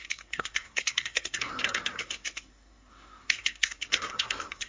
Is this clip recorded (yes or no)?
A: no